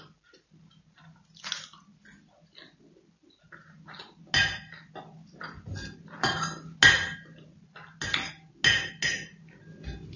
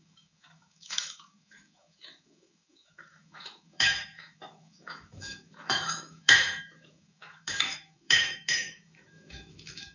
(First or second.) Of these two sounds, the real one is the first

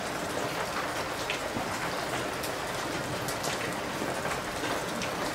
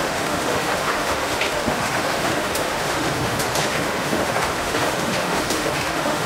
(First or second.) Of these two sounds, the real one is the first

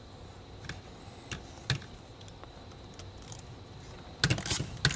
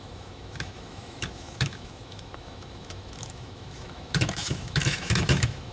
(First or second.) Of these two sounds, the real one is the first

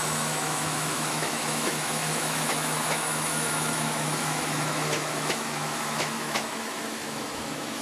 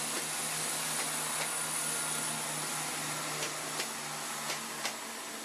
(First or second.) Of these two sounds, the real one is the second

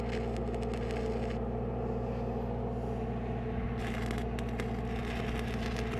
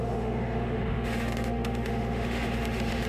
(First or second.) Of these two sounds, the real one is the first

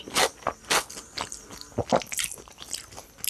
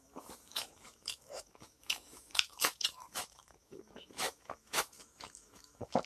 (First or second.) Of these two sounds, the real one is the first